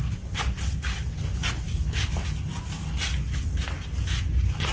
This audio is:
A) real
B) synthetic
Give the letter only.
A